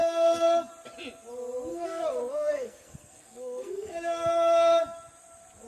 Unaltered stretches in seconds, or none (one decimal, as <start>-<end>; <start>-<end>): 0.7-1.7; 4.8-5.7